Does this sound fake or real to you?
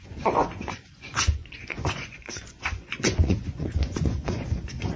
fake